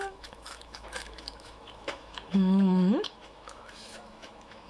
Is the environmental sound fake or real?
fake